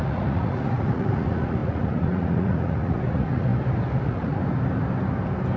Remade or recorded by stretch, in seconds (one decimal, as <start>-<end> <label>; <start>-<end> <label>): 0.0-3.5 remade; 3.5-4.0 recorded; 4.0-4.4 remade; 4.4-5.6 recorded